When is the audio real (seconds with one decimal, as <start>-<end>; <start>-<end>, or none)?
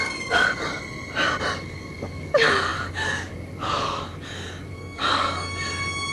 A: 0.7-1.4